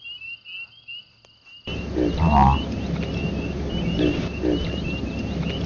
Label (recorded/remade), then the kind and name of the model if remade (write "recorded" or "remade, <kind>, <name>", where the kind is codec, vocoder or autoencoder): recorded